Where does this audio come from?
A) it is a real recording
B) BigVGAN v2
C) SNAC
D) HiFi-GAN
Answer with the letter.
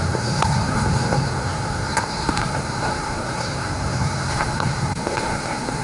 C